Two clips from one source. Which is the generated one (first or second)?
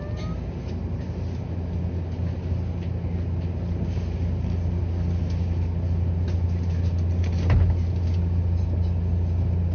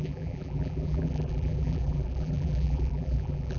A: second